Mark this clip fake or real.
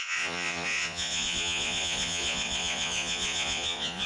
fake